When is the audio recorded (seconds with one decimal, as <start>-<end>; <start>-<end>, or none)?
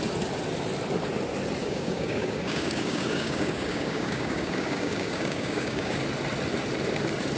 0.0-1.6; 6.0-7.4